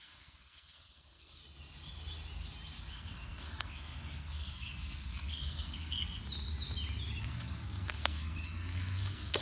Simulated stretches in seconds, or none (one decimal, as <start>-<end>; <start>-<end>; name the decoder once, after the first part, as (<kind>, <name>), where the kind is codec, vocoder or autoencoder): 0.0-1.4 (codec, SNAC); 2.9-6.2; 7.2-9.4